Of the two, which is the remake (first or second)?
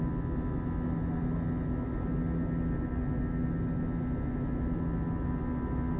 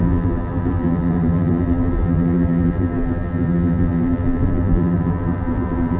second